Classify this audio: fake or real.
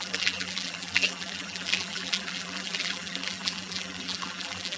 fake